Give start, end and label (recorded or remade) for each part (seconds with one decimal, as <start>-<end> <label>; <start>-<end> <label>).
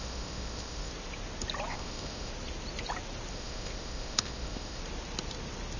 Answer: 0.0-0.9 remade; 0.9-1.7 recorded; 1.7-2.3 remade; 2.3-3.3 recorded; 3.3-4.8 remade; 4.8-5.8 recorded